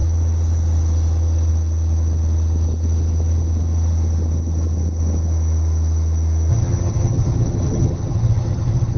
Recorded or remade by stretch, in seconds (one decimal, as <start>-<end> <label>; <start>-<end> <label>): 0.0-6.5 recorded; 6.5-9.0 remade